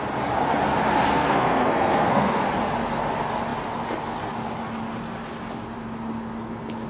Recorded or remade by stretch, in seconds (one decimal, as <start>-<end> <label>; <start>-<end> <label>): 0.0-1.1 recorded; 1.1-2.4 remade; 2.4-6.9 recorded